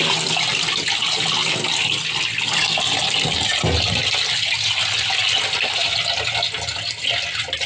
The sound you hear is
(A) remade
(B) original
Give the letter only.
B